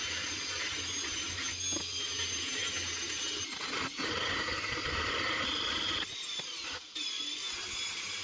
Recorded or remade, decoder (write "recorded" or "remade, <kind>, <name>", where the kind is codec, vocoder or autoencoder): recorded